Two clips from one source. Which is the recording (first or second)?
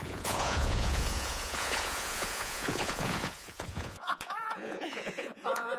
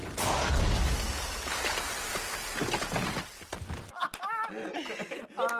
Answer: second